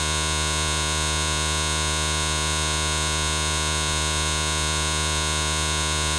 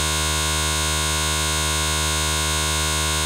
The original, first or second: second